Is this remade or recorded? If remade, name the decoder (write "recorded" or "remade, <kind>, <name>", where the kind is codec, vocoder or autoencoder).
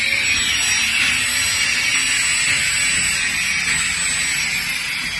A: recorded